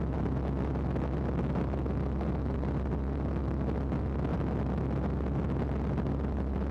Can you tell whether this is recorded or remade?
recorded